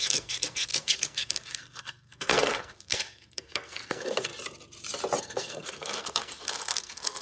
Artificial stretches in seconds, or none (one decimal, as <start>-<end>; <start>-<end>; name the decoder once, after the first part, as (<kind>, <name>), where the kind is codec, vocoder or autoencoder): 0.0-4.3 (codec, SNAC); 5.2-7.2